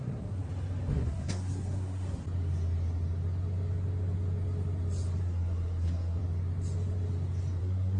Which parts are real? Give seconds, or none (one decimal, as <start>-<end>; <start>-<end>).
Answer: 0.4-0.9; 2.2-5.2; 6.2-7.6